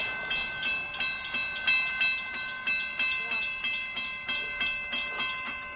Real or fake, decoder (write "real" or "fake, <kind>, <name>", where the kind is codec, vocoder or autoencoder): real